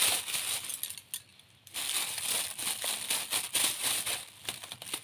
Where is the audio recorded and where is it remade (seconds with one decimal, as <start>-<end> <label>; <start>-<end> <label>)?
0.0-5.0 recorded

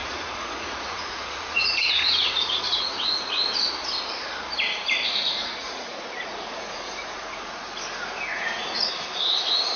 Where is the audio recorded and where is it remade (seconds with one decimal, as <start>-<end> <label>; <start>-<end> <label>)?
0.0-3.7 remade; 3.7-5.2 recorded; 5.2-7.6 remade; 7.6-8.3 recorded; 8.3-8.9 remade; 8.9-9.8 recorded

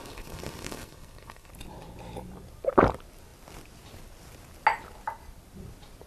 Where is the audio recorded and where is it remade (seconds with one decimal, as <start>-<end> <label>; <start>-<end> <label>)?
0.0-1.5 remade; 1.5-6.1 recorded

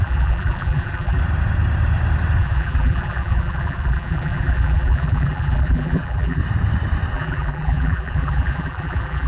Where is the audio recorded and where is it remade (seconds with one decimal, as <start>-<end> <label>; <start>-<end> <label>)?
0.0-1.2 remade; 1.2-2.4 recorded; 2.4-6.4 remade; 6.4-7.1 recorded; 7.1-9.3 remade

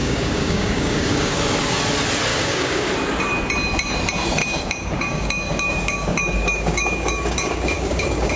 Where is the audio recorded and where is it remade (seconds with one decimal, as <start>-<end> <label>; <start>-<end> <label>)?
0.0-1.4 remade; 1.4-2.3 recorded; 2.3-2.9 remade; 2.9-4.4 recorded; 4.4-8.4 remade

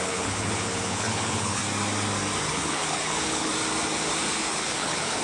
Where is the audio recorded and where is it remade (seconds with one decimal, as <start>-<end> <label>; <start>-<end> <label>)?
0.0-1.6 remade; 1.6-2.4 recorded; 2.4-3.5 remade; 3.5-4.4 recorded; 4.4-5.2 remade